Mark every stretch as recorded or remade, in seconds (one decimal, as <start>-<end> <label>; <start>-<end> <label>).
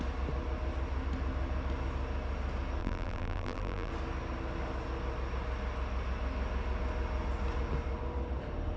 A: 0.0-2.8 recorded; 2.8-3.9 remade; 3.9-8.8 recorded